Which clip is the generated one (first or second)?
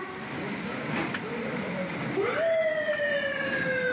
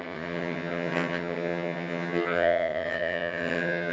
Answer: second